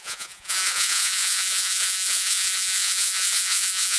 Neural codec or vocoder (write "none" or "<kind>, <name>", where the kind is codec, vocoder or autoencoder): vocoder, Vocos